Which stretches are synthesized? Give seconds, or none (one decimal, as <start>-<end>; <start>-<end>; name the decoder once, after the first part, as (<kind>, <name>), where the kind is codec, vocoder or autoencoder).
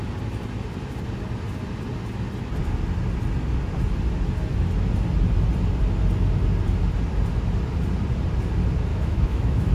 8.9-9.7 (autoencoder, DAC-VAE)